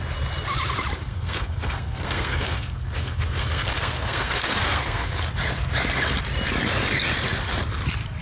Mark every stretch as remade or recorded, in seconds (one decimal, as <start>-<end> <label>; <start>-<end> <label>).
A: 0.0-1.1 recorded; 1.1-5.2 remade; 5.2-8.2 recorded